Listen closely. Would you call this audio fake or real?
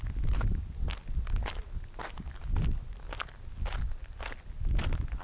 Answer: real